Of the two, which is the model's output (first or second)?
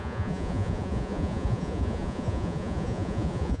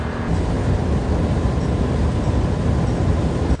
first